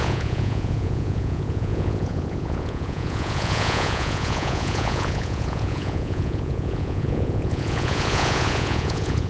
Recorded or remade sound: remade